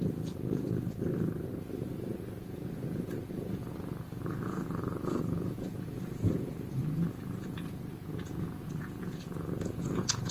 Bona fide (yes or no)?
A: no